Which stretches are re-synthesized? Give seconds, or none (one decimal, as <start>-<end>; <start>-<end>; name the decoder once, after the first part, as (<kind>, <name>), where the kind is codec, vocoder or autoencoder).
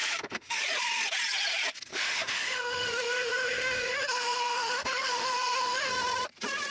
0.0-0.6 (autoencoder, DAC-VAE); 1.9-5.9